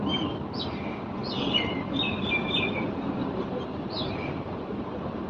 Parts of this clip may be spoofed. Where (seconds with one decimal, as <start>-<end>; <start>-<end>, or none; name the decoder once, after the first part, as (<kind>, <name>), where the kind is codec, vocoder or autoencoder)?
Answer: 3.2-4.1 (vocoder, BigVGAN v2)